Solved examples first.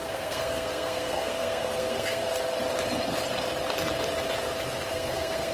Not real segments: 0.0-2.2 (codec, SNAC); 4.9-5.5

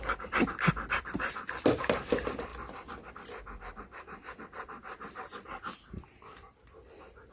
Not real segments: none

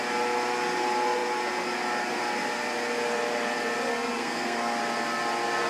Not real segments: 3.9-4.8 (codec, SNAC)

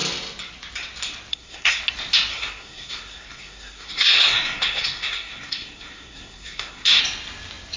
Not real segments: 1.3-1.8 (codec, SNAC); 2.3-7.0